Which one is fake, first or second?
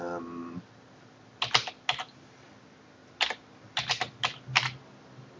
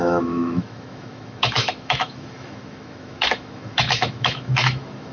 second